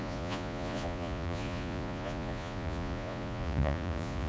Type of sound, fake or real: fake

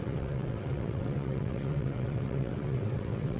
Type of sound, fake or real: fake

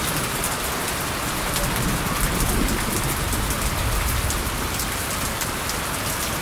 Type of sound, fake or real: real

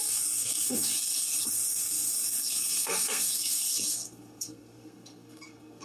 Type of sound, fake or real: fake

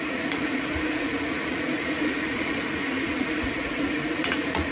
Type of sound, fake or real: fake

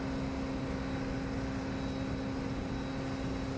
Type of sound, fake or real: real